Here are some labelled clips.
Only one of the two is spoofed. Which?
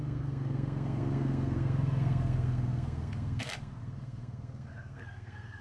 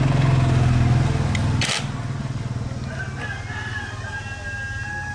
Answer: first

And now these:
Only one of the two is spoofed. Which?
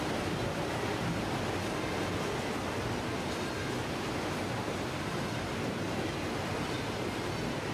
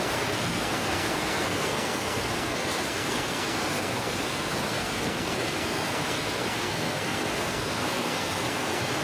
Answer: second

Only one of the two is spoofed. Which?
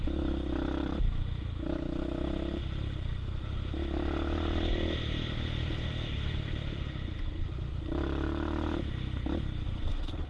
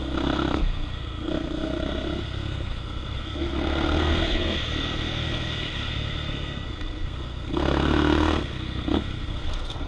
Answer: second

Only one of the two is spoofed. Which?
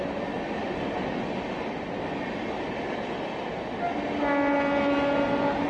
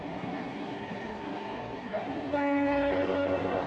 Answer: second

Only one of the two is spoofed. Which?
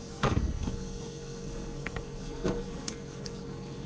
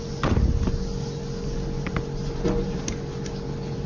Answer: first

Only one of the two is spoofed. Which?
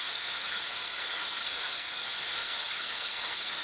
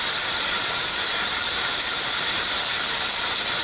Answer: first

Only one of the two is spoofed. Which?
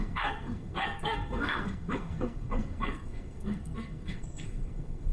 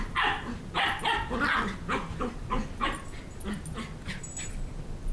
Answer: first